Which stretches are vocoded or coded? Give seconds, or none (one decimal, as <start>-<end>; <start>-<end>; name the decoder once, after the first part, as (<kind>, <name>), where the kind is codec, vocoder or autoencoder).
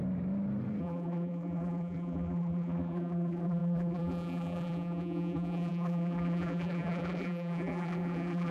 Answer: 0.8-8.5 (vocoder, BigVGAN v2)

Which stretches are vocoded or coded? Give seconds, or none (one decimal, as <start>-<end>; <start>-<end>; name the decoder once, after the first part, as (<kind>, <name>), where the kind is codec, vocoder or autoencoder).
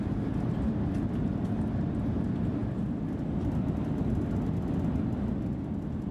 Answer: none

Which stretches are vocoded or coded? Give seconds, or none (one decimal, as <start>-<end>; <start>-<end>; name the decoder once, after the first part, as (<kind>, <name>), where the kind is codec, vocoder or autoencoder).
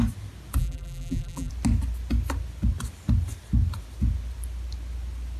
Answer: 0.6-1.5 (vocoder, BigVGAN v2)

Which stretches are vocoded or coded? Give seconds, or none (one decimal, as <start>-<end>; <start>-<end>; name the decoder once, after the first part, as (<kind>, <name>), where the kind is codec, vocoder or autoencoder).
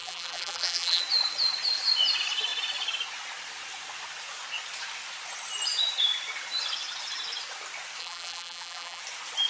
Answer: 0.0-1.0 (vocoder, BigVGAN v2); 8.0-9.0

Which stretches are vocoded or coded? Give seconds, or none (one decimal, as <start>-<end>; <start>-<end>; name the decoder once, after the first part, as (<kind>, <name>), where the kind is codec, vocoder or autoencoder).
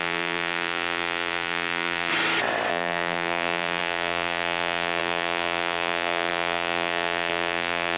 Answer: 0.0-2.1 (vocoder, BigVGAN v2); 2.7-8.0